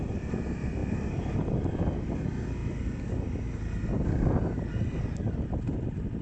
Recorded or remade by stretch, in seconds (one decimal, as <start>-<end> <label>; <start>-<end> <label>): 0.0-6.2 recorded